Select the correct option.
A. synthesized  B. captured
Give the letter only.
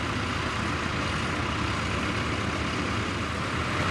B